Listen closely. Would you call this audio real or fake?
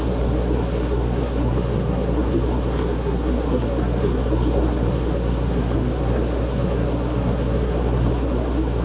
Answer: fake